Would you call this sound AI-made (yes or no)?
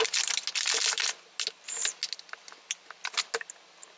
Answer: no